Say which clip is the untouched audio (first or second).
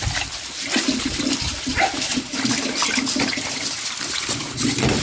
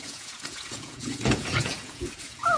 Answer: first